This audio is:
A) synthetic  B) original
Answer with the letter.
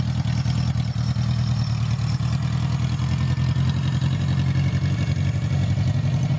B